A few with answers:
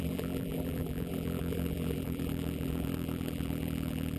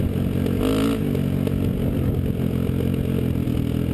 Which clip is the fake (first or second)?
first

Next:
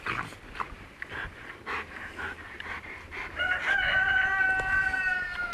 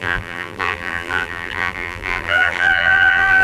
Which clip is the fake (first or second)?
second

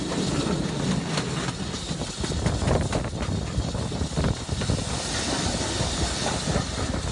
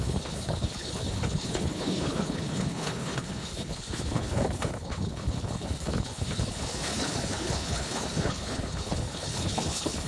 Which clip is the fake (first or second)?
second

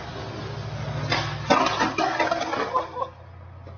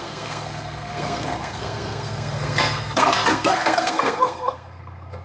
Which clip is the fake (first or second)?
second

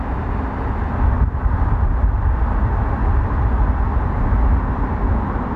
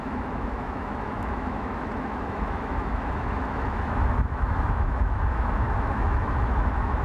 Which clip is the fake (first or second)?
second